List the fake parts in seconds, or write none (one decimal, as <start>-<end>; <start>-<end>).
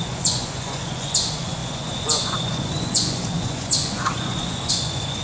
0.0-5.2